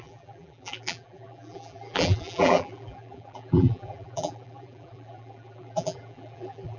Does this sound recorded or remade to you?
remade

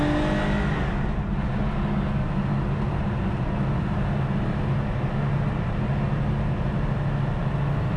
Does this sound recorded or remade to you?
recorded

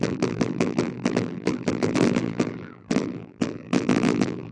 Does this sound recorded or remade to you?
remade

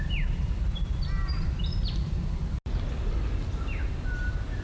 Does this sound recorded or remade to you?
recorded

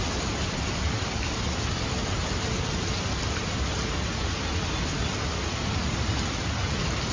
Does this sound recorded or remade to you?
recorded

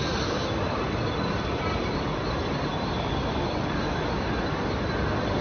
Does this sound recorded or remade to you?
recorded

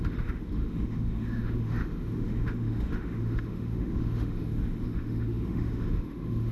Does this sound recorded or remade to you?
remade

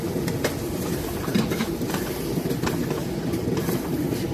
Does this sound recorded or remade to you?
remade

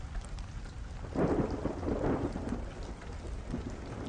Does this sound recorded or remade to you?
recorded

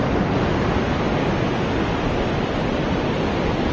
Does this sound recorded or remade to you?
recorded